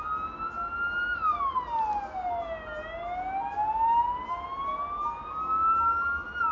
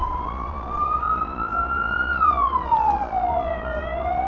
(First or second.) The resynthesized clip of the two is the second